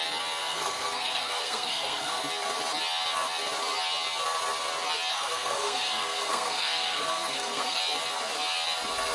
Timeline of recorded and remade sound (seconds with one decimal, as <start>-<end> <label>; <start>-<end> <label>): 0.0-0.4 recorded; 0.4-2.2 remade; 2.2-5.1 recorded; 5.1-7.8 remade; 7.8-9.1 recorded